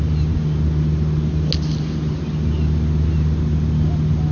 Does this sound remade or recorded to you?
recorded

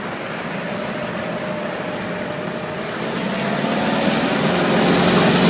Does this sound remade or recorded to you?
recorded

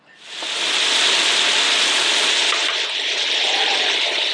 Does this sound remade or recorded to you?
recorded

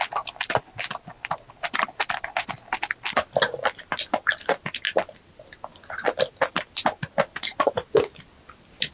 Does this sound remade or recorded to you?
recorded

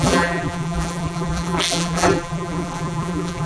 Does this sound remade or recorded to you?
remade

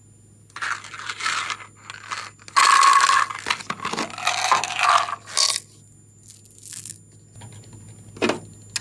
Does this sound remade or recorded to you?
recorded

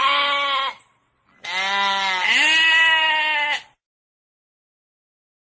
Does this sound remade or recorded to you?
recorded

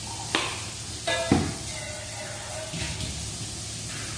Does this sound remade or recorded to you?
recorded